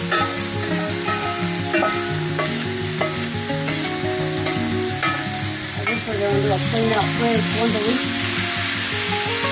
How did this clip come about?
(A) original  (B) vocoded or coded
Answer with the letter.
A